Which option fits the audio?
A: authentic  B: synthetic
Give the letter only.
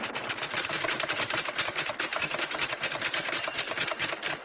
B